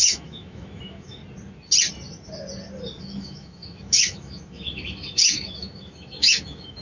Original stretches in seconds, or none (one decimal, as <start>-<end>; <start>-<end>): 1.2-3.0